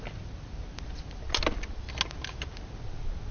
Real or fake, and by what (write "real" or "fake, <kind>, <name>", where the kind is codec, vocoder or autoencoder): real